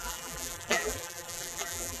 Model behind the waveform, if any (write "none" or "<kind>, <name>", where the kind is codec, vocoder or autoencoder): vocoder, BigVGAN v2